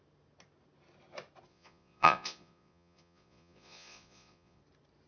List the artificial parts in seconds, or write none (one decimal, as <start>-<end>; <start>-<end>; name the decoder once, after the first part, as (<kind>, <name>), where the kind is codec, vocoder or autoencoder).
1.5-4.6 (vocoder, Vocos)